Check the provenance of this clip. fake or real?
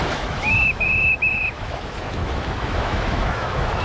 fake